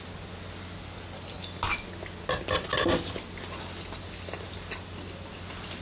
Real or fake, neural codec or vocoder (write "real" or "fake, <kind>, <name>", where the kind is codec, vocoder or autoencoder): real